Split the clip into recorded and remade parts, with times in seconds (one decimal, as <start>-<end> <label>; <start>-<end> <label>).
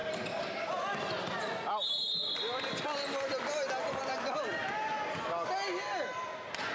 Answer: 0.0-6.7 recorded